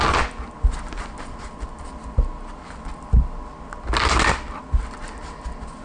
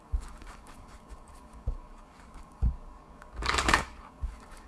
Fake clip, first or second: second